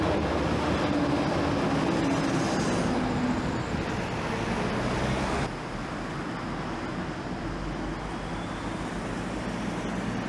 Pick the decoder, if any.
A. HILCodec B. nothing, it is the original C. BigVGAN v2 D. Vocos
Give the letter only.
B